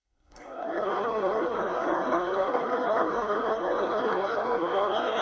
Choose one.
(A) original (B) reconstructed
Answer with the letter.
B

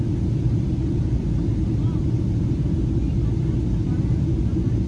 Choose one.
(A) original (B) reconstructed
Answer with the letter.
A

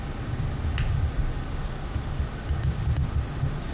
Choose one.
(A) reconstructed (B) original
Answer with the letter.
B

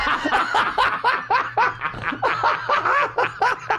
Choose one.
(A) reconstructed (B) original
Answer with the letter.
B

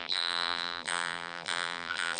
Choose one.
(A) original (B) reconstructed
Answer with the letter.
B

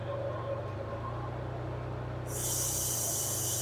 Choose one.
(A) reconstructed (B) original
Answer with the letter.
B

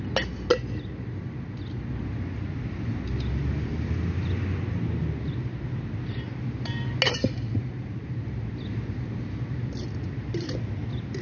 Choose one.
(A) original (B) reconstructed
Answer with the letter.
A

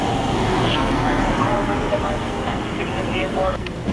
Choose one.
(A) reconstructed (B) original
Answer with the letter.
A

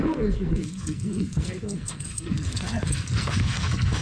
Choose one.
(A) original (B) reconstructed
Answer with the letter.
B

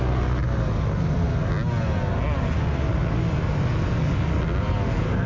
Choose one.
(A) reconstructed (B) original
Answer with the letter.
B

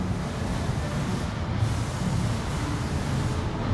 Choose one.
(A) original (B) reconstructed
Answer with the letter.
A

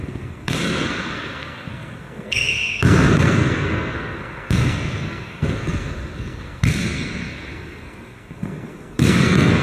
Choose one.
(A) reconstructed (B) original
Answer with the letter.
A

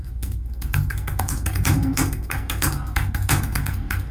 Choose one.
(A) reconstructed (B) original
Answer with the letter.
A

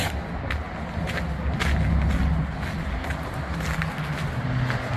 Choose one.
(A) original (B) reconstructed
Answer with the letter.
A